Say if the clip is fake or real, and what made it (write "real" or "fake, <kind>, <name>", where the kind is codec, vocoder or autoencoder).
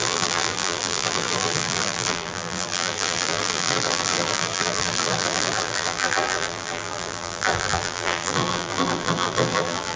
fake, vocoder, BigVGAN v2